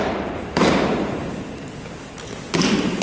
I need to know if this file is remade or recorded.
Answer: recorded